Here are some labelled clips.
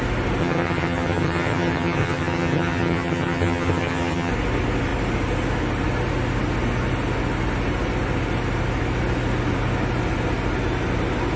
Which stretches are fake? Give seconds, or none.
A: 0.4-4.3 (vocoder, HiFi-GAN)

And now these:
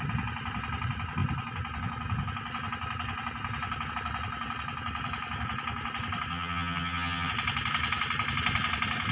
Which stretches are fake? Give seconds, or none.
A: 6.3-7.3 (vocoder, HiFi-GAN)

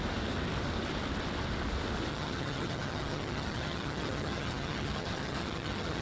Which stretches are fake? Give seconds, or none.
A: 2.1-6.0 (vocoder, HiFi-GAN)